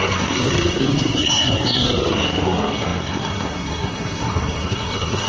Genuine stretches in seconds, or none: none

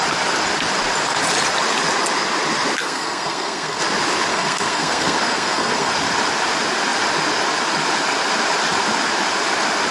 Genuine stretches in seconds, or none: 0.0-2.8; 3.8-4.3; 5.9-9.9